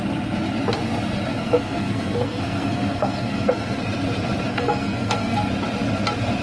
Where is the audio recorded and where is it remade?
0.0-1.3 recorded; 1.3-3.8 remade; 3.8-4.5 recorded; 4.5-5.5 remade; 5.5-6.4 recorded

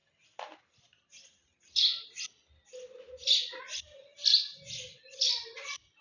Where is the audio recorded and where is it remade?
0.0-3.6 recorded; 3.6-4.1 remade; 4.1-4.9 recorded; 4.9-6.0 remade

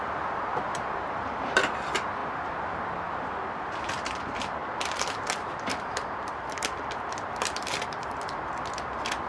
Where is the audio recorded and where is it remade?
0.0-2.2 remade; 2.2-3.5 recorded; 3.5-9.3 remade

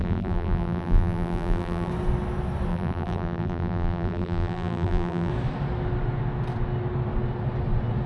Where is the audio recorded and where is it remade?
0.0-1.9 remade; 1.9-2.7 recorded; 2.7-5.3 remade; 5.3-8.1 recorded